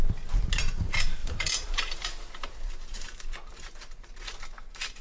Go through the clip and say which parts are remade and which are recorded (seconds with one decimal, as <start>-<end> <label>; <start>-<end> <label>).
0.0-1.2 recorded; 1.2-4.1 remade; 4.1-5.0 recorded